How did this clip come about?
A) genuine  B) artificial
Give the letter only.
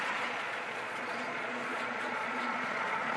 B